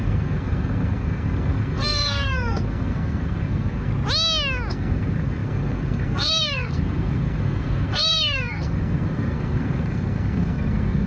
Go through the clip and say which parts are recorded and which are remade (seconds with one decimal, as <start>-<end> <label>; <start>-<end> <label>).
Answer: 0.0-3.9 remade; 3.9-4.7 recorded; 4.7-11.1 remade